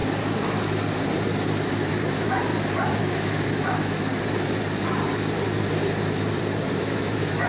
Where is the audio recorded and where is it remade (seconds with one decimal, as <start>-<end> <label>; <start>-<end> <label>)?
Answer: 0.0-1.9 recorded; 1.9-2.5 remade; 2.5-3.0 recorded; 3.0-4.1 remade; 4.1-6.8 recorded; 6.8-7.5 remade